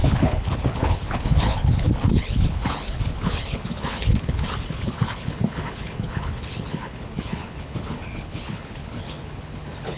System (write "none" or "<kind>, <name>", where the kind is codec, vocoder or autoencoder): codec, HILCodec